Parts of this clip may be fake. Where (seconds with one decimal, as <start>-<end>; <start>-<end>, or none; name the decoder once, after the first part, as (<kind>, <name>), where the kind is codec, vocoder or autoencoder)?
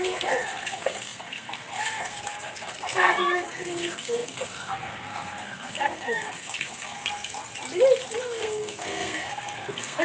0.0-7.4 (codec, SNAC); 8.2-10.0